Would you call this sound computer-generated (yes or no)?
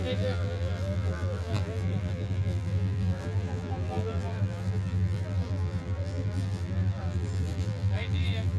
yes